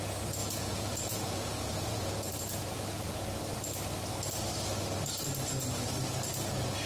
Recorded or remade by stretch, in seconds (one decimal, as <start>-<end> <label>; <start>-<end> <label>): 0.0-0.4 recorded; 0.4-3.2 remade; 3.2-6.9 recorded